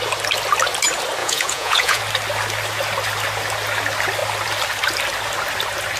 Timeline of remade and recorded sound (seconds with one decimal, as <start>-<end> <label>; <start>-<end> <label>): 0.0-1.2 recorded; 1.2-2.0 remade; 2.0-6.0 recorded